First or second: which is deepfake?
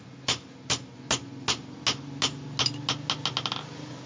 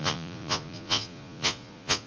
second